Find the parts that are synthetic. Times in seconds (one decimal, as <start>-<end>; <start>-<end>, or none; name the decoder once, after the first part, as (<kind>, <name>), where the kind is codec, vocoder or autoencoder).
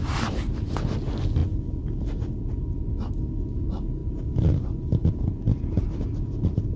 none